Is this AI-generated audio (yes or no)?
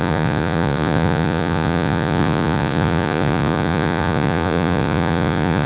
yes